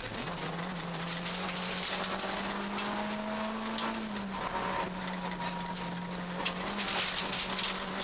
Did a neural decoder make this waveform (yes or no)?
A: no